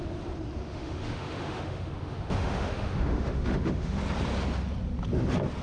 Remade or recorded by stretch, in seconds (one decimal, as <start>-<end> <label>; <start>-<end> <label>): 0.0-0.6 recorded; 0.6-4.0 remade; 4.0-5.6 recorded